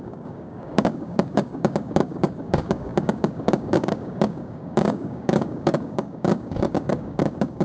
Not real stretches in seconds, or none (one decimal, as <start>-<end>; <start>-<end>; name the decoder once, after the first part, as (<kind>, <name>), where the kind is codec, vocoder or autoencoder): 0.0-7.6 (codec, DAC)